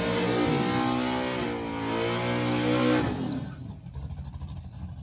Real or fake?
real